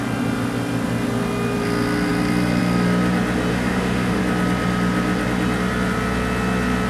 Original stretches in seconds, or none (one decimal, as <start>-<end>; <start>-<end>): 0.0-3.5; 4.2-6.9